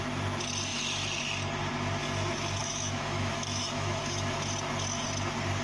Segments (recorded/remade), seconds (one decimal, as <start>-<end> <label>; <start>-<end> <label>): 0.0-2.6 recorded; 2.6-4.4 remade; 4.4-5.6 recorded